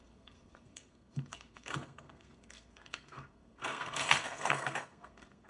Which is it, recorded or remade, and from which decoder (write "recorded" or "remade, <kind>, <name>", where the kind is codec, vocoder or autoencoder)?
remade, codec, SNAC